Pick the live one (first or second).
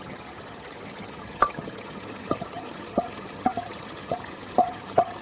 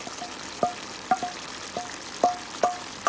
second